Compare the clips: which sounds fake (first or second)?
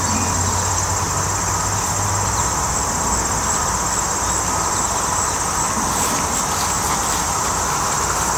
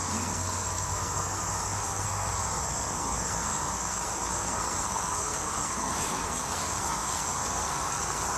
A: second